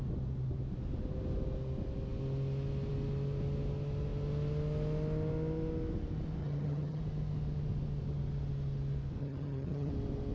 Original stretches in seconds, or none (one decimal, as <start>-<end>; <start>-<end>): 0.0-6.4; 7.0-9.2; 9.9-10.3